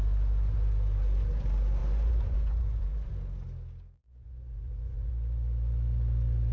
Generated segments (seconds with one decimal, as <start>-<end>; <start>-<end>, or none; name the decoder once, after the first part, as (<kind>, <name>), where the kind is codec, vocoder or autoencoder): 1.8-3.1 (vocoder, Vocos); 4.0-5.1